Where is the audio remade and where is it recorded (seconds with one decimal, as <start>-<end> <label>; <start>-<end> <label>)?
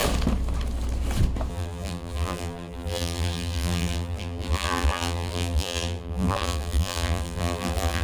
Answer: 0.0-1.5 recorded; 1.5-8.0 remade